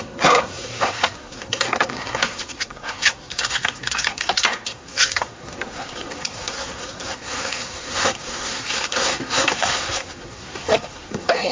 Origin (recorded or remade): remade